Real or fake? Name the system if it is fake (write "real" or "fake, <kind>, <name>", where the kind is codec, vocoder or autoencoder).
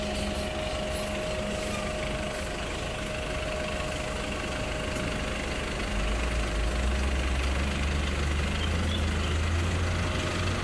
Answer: real